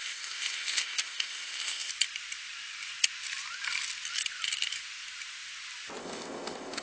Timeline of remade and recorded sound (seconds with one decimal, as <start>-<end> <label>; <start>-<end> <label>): 0.0-1.9 remade; 1.9-6.0 recorded; 6.0-6.8 remade